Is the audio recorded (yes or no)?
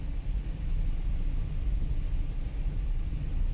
yes